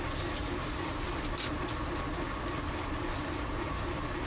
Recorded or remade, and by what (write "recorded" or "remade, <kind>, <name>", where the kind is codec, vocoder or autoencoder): recorded